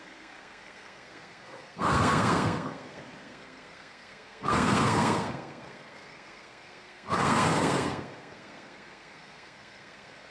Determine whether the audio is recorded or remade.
remade